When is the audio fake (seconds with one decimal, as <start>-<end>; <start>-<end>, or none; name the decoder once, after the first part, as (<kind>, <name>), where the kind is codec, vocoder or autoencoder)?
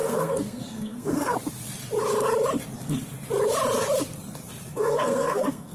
0.0-1.3 (codec, SNAC); 4.7-5.7